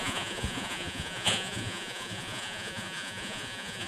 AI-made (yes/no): yes